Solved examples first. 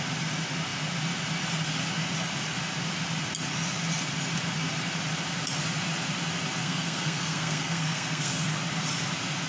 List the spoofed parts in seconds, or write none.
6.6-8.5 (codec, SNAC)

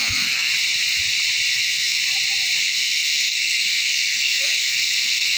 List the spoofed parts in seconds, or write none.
0.0-0.5 (codec, SNAC); 1.5-2.0; 2.6-5.4

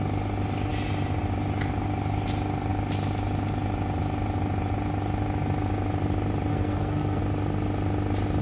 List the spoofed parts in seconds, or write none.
6.5-7.2 (codec, SNAC)

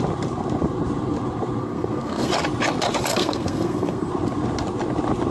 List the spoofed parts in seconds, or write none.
1.6-2.3 (codec, SNAC); 3.1-4.1

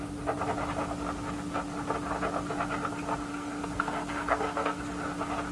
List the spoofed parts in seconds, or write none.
3.3-4.8 (codec, SNAC)

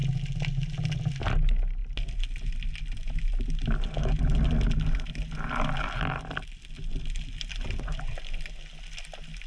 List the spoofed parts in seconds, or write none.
none